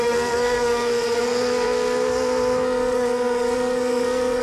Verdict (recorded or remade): remade